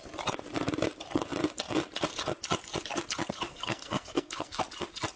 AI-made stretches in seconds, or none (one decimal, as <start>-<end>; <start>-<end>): 3.5-4.6